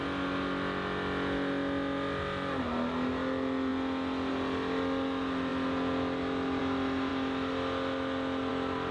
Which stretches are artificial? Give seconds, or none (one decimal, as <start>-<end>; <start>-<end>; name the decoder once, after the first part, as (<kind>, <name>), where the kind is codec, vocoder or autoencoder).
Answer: none